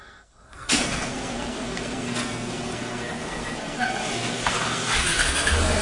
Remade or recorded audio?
remade